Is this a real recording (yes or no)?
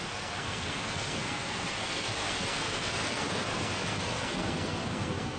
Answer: no